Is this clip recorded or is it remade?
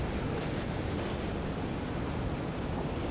recorded